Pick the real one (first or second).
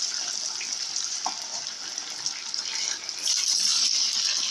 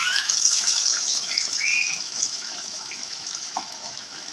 first